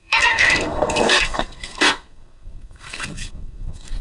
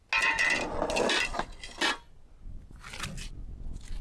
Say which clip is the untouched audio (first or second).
second